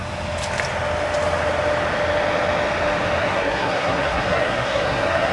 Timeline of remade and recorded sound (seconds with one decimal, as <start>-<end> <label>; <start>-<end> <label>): 0.0-3.2 recorded; 3.2-5.3 remade